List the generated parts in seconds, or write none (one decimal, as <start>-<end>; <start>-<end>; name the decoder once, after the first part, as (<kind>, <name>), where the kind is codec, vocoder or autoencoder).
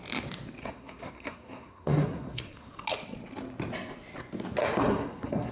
0.6-2.7 (codec, SNAC); 4.6-5.5